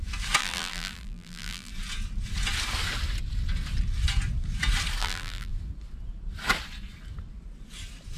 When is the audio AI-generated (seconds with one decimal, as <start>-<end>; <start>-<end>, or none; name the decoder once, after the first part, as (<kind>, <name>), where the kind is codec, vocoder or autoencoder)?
0.4-1.7 (vocoder, BigVGAN v2); 5.0-5.5